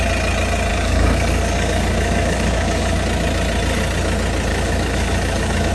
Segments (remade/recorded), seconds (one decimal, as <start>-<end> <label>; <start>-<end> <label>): 0.0-0.7 recorded; 0.7-3.0 remade; 3.0-4.5 recorded; 4.5-5.7 remade